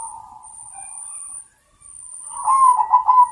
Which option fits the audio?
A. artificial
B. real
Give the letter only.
B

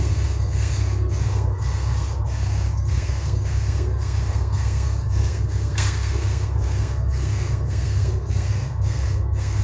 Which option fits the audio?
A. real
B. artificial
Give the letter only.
B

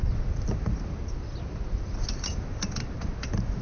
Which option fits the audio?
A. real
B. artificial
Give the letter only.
A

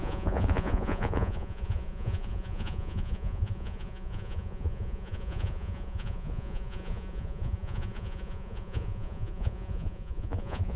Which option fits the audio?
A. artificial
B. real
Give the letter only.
A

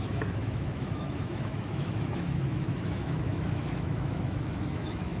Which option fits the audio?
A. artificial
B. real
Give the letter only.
A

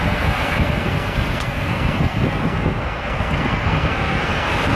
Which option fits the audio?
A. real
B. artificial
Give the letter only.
B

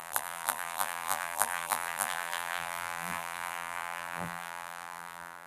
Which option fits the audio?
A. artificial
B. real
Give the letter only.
A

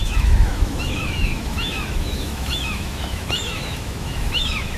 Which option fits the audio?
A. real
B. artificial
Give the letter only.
B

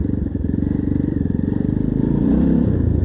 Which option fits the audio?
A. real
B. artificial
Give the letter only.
B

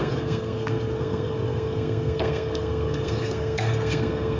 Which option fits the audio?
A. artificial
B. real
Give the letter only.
A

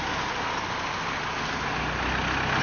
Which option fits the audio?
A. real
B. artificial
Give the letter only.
A